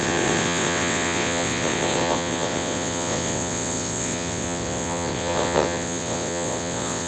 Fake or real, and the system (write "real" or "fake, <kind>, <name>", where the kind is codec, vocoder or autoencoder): fake, vocoder, WaveNeXt